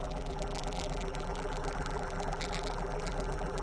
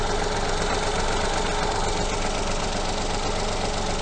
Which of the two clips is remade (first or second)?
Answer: first